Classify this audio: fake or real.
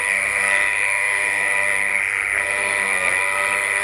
fake